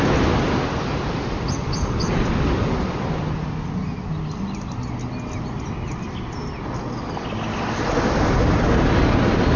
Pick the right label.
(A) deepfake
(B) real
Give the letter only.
B